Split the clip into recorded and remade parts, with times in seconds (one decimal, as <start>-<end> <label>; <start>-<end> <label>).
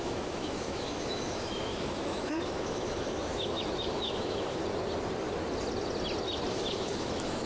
0.0-4.6 remade; 4.6-6.5 recorded; 6.5-7.5 remade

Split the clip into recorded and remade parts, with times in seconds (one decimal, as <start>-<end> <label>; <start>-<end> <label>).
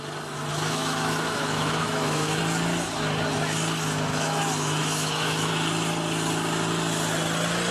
0.0-0.5 recorded; 0.5-2.4 remade; 2.4-4.1 recorded; 4.1-5.5 remade; 5.5-7.7 recorded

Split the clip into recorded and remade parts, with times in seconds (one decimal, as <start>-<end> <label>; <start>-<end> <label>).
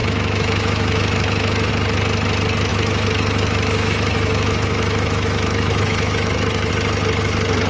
0.0-1.7 remade; 1.7-2.7 recorded; 2.7-6.7 remade; 6.7-7.7 recorded